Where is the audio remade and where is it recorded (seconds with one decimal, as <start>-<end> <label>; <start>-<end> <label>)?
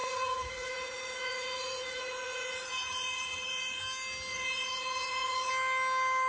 0.0-3.8 remade; 3.8-4.3 recorded; 4.3-5.5 remade; 5.5-6.3 recorded